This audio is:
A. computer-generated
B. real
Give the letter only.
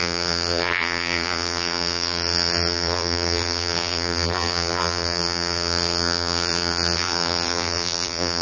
A